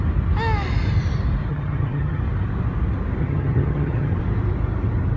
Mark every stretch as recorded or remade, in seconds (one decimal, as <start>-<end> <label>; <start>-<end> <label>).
0.0-1.5 recorded; 1.5-2.2 remade; 2.2-3.2 recorded; 3.2-4.2 remade; 4.2-5.2 recorded